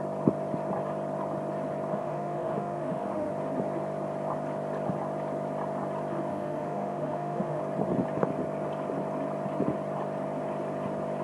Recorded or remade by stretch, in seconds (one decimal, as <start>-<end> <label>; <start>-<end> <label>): 0.0-1.9 recorded; 1.9-3.3 remade; 3.3-6.3 recorded; 6.3-7.6 remade; 7.6-11.2 recorded